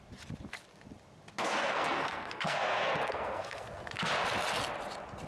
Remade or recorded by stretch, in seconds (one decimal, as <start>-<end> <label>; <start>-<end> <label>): 0.0-1.4 recorded; 1.4-4.1 remade; 4.1-5.3 recorded